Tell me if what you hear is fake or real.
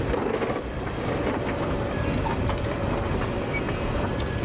real